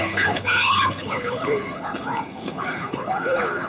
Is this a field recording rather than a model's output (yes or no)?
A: no